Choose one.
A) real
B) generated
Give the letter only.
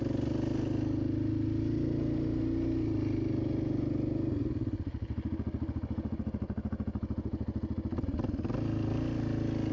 A